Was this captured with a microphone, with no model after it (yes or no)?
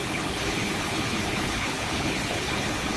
no